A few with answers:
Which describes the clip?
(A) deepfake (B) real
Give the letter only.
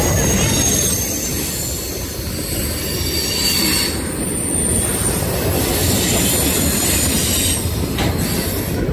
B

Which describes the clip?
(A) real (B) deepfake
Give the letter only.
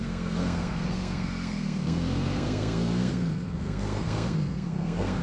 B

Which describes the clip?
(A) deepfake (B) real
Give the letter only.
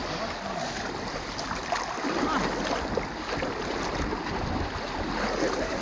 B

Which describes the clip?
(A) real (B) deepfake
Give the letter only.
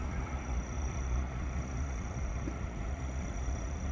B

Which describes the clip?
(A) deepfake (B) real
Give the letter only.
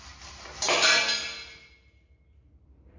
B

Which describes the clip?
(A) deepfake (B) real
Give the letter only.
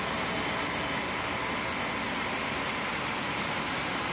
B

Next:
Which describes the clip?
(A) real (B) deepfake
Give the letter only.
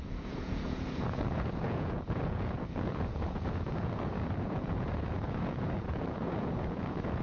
B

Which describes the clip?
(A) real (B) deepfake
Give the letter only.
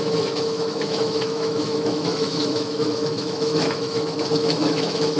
B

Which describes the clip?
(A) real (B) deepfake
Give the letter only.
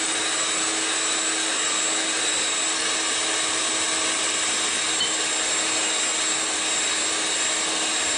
A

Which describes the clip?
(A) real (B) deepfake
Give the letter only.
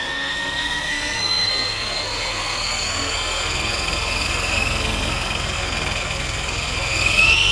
B